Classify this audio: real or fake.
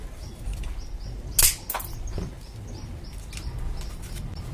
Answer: real